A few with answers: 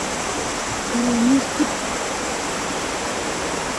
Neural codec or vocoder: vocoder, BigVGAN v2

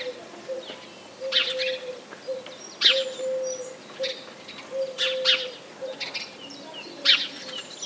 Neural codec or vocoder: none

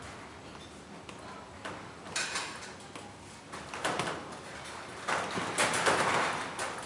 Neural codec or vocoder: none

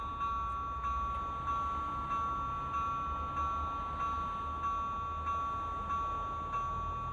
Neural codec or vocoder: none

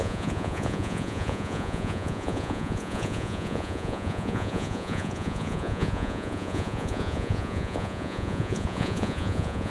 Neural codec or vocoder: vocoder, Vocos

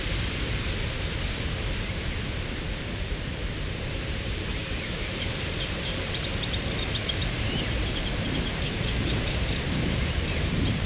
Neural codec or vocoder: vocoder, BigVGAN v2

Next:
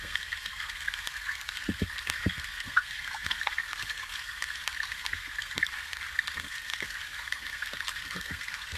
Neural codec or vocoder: codec, SNAC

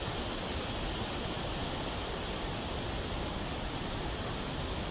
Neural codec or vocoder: none